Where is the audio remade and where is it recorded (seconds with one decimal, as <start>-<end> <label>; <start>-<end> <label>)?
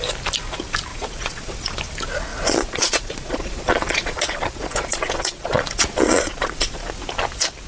0.0-0.9 recorded; 0.9-1.8 remade; 1.8-2.3 recorded; 2.3-6.9 remade; 6.9-7.7 recorded